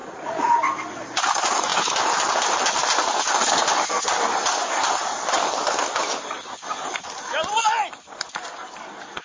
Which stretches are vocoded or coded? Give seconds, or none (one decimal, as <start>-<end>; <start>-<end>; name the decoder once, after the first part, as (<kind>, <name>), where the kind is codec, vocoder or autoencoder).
0.0-0.5 (vocoder, Vocos)

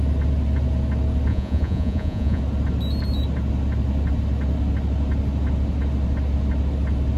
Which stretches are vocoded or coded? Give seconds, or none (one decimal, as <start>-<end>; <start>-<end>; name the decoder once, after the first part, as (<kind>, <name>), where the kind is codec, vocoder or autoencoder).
1.3-2.4 (vocoder, Vocos)